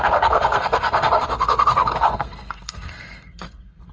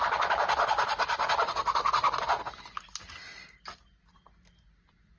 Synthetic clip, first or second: first